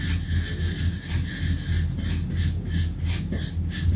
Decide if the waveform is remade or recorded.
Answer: recorded